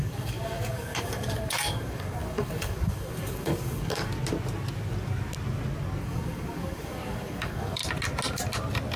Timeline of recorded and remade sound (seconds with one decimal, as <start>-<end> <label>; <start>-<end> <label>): 0.0-4.1 remade; 4.1-6.0 recorded; 6.0-7.8 remade; 7.8-9.0 recorded